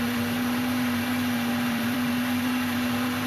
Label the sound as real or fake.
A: fake